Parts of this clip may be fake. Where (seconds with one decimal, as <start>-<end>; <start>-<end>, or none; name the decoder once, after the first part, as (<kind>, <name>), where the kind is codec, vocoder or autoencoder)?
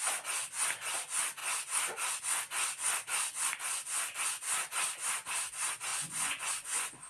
5.9-7.1 (vocoder, Vocos)